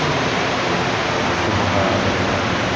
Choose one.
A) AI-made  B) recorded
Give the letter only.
B